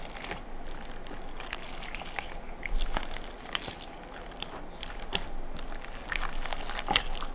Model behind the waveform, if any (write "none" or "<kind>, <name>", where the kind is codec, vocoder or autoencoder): none